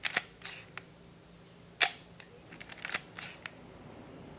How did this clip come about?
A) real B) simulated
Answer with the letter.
A